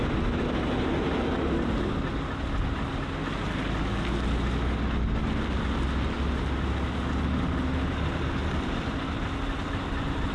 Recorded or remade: recorded